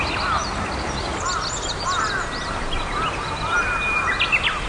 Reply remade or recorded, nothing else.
recorded